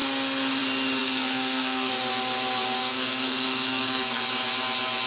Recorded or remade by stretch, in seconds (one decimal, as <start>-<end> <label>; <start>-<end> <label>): 0.0-1.0 recorded; 1.0-1.9 remade; 1.9-2.8 recorded; 2.8-4.2 remade; 4.2-5.1 recorded